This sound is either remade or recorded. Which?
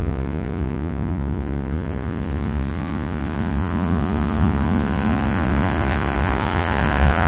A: remade